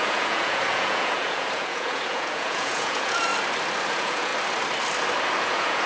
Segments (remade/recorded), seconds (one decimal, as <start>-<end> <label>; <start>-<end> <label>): 0.0-3.3 remade; 3.3-3.9 recorded; 3.9-4.3 remade; 4.3-5.4 recorded; 5.4-5.9 remade

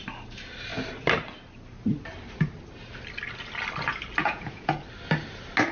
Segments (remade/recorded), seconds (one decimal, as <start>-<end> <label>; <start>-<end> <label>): 0.0-4.2 recorded; 4.2-4.8 remade; 4.8-5.7 recorded

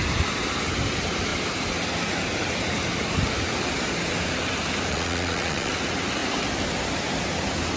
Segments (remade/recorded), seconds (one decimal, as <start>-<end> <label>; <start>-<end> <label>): 0.0-4.9 recorded; 4.9-5.7 remade; 5.7-7.8 recorded